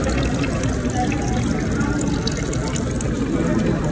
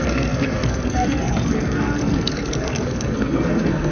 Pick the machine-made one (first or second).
second